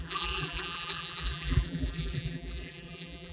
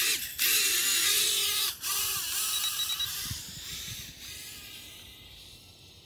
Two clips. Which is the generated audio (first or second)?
first